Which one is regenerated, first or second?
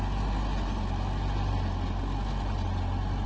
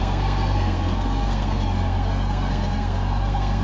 second